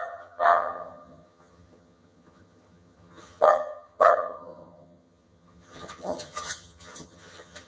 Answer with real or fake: fake